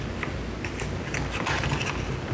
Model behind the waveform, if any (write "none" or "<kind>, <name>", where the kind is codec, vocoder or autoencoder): none